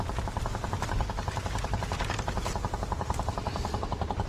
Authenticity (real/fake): real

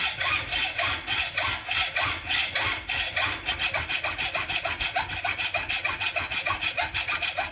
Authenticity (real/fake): real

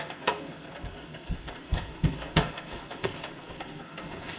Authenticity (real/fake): fake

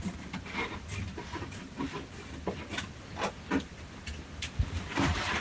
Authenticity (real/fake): real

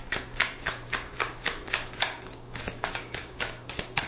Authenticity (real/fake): fake